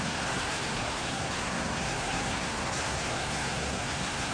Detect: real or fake fake